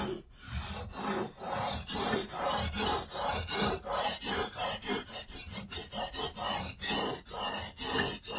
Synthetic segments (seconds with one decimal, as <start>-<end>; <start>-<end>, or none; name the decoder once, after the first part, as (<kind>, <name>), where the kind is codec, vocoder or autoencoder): 1.2-6.2 (vocoder, BigVGAN v2)